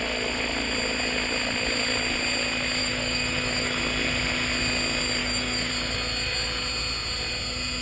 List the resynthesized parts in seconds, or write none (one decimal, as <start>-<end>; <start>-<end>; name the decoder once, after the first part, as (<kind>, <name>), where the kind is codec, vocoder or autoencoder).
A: 2.8-3.8 (autoencoder, DAC-VAE); 5.2-5.7